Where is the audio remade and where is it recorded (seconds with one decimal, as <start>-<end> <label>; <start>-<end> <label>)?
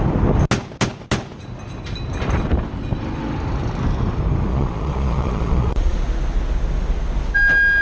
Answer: 0.0-4.5 recorded; 4.5-6.0 remade; 6.0-7.8 recorded